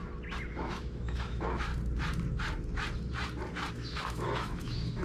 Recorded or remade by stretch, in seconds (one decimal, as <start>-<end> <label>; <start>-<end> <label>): 0.0-0.5 recorded; 0.5-1.7 remade; 1.7-3.7 recorded; 3.7-5.0 remade